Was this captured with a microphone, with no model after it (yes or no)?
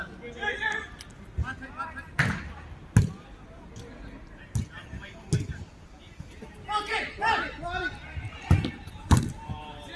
yes